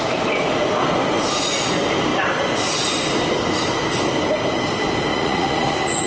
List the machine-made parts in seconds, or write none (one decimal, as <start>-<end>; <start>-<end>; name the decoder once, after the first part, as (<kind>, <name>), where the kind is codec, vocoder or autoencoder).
5.1-6.1 (vocoder, Vocos)